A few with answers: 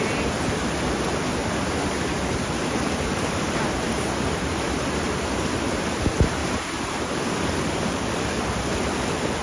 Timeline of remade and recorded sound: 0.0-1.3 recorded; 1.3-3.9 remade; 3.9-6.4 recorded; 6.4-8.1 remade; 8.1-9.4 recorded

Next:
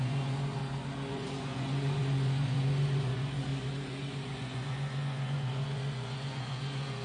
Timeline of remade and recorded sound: 0.0-0.6 remade; 0.6-1.1 recorded; 1.1-7.0 remade

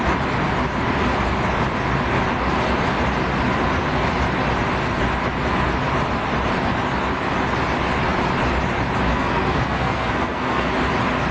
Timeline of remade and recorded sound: 0.0-9.1 recorded; 9.1-10.7 remade; 10.7-11.3 recorded

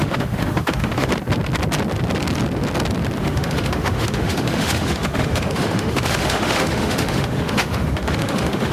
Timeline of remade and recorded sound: 0.0-1.1 remade; 1.1-3.2 recorded; 3.2-8.7 remade